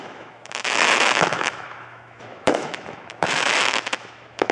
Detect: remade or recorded remade